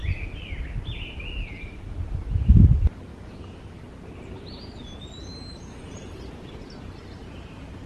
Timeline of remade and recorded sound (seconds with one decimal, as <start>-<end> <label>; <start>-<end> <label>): 0.0-3.1 recorded; 3.1-3.8 remade; 3.8-7.9 recorded